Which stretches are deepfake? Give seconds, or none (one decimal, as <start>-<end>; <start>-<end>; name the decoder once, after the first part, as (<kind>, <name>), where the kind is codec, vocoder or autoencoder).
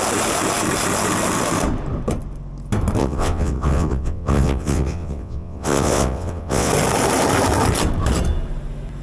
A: 3.0-6.7 (vocoder, WaveNeXt)